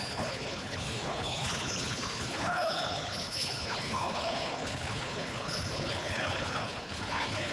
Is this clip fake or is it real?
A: fake